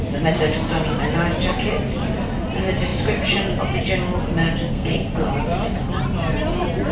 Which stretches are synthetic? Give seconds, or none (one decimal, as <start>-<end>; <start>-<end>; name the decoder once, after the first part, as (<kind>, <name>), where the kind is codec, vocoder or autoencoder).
4.7-5.3 (codec, SNAC)